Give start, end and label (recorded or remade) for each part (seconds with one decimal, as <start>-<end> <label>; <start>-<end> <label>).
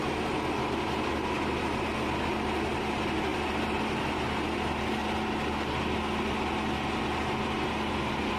0.0-8.4 recorded